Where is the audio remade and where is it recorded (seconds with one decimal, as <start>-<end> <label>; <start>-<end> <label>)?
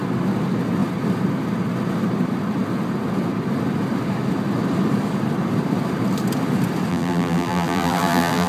0.0-6.9 recorded; 6.9-8.5 remade